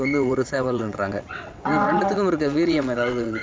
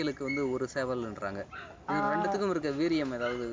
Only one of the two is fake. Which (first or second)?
first